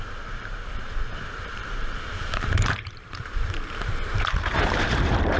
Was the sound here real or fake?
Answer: fake